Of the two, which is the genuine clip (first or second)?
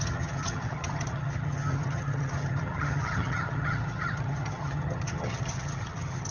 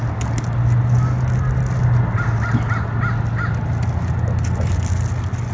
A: second